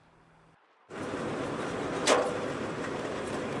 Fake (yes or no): yes